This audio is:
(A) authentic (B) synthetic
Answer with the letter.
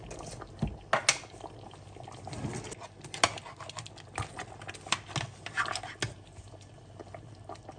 A